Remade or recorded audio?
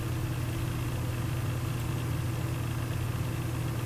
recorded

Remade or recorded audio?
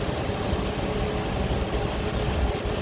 recorded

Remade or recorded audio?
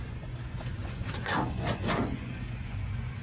remade